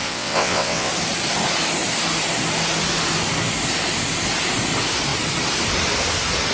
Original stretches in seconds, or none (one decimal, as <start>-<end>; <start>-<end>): 0.9-6.5